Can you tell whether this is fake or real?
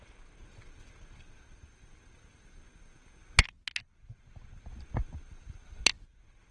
real